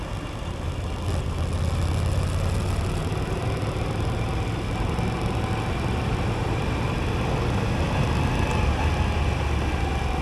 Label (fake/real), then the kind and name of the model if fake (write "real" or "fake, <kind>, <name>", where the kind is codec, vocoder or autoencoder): real